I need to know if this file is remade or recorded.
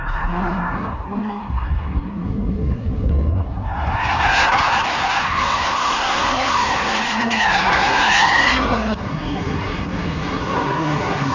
remade